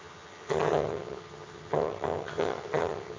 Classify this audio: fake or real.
fake